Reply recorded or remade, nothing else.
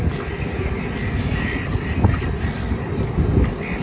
recorded